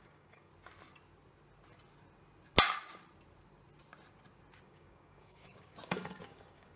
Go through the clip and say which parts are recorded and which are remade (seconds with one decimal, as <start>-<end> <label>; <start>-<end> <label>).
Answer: 0.0-0.5 remade; 0.5-4.6 recorded; 4.6-6.8 remade